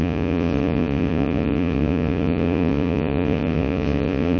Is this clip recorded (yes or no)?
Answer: no